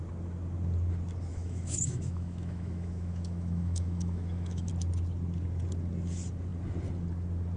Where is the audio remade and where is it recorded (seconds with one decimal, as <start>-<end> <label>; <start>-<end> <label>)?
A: 0.0-1.3 recorded; 1.3-4.7 remade; 4.7-7.6 recorded